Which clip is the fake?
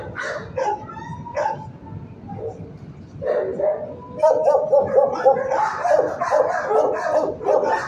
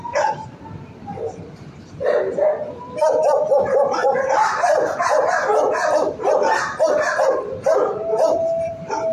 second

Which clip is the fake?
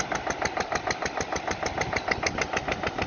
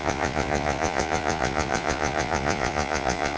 second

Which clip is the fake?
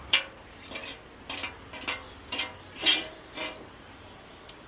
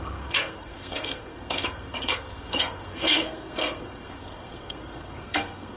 second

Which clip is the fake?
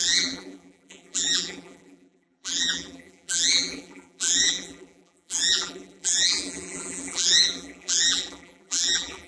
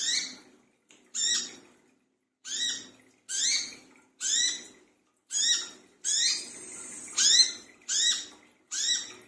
first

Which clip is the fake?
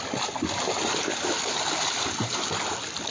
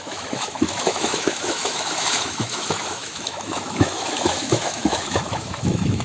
second